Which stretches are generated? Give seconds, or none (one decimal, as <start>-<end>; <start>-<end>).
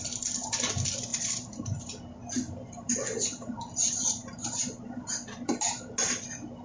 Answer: 1.1-1.8; 2.2-5.5